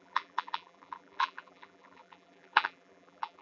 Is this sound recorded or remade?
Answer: remade